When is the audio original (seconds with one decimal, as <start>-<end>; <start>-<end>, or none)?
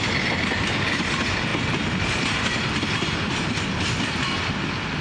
0.0-5.0